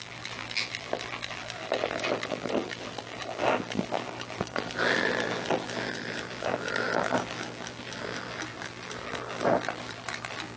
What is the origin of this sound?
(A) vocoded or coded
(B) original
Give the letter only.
A